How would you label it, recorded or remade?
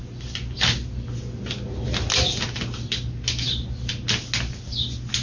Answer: recorded